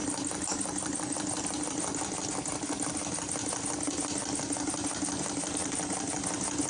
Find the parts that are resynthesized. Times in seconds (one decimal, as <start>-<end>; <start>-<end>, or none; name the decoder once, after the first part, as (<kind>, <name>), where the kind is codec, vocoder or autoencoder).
none